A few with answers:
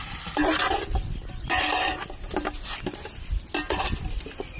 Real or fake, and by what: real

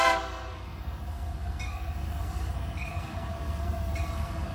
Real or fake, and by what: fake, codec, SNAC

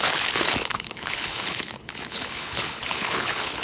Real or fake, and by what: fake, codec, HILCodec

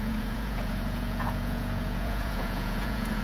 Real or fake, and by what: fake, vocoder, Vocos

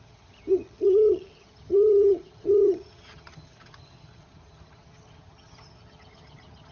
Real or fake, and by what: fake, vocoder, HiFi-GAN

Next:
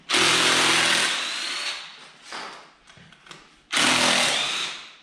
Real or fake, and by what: real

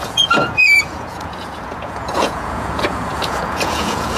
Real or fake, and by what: fake, vocoder, Vocos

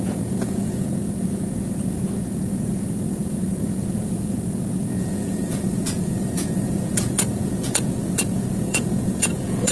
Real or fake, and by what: fake, vocoder, Vocos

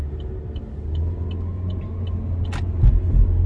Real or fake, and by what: real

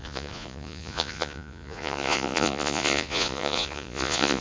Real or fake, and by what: fake, vocoder, Vocos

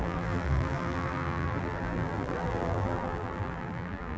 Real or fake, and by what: fake, vocoder, BigVGAN v2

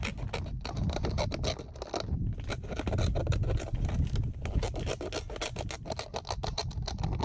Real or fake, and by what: real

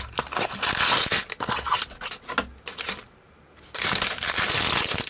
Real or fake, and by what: real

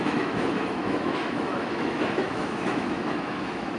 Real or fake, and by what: fake, autoencoder, DAC-VAE